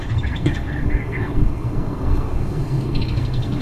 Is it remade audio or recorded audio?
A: remade